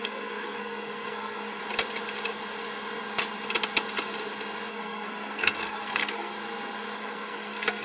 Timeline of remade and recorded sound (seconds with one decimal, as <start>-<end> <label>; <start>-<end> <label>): 0.0-1.6 remade; 1.6-4.7 recorded; 4.7-6.3 remade; 6.3-7.0 recorded; 7.0-7.8 remade